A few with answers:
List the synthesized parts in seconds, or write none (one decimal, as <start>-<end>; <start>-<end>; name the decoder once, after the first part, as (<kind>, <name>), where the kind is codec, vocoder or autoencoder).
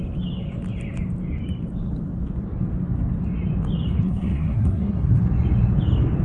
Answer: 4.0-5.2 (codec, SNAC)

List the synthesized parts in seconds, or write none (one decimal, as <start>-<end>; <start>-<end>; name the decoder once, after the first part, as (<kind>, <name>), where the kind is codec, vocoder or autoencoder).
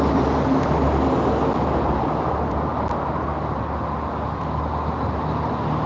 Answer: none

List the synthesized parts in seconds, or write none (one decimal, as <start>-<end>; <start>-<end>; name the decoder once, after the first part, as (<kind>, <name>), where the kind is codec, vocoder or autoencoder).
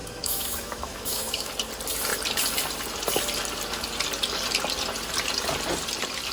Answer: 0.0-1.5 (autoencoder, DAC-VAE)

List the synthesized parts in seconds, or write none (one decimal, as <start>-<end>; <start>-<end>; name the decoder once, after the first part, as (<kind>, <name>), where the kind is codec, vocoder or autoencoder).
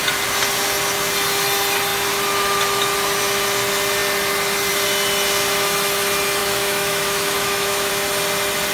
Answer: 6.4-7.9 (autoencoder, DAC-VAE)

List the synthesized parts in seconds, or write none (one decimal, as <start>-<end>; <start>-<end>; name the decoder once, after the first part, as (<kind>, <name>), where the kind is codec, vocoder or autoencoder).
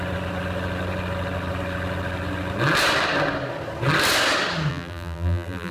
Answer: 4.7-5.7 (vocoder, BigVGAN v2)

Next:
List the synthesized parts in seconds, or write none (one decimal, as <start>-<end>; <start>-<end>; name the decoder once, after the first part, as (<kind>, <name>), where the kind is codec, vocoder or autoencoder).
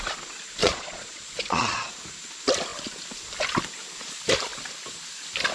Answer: 0.6-1.9 (vocoder, Vocos)